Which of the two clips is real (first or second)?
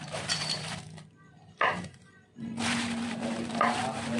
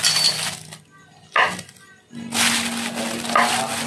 second